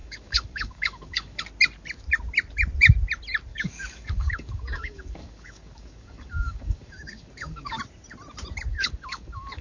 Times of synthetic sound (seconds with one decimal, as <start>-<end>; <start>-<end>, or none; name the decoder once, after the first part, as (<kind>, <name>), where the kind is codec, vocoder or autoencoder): 0.0-1.4 (codec, DAC); 3.5-7.8; 8.7-9.6